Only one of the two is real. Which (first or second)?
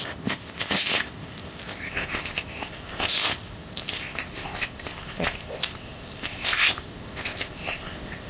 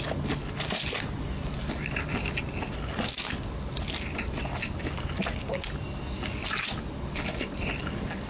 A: second